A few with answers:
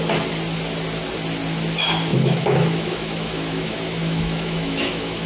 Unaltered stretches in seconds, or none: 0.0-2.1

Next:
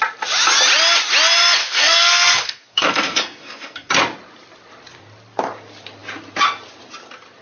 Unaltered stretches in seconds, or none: 0.0-1.6; 3.9-7.4

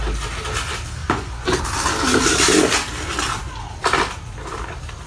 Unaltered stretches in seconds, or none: 0.0-1.0; 1.6-5.1